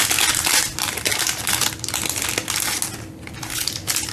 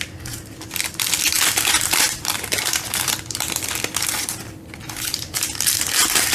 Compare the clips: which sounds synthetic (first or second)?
second